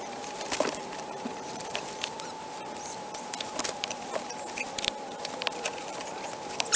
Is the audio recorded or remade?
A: remade